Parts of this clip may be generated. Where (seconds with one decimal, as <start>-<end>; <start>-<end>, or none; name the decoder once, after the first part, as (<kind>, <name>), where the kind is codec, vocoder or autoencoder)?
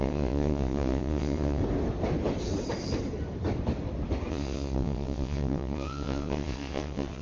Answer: 0.0-1.6 (vocoder, WaveNeXt); 4.3-7.2